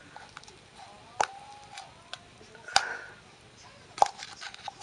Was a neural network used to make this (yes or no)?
no